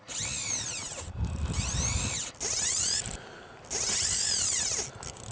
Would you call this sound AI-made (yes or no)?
no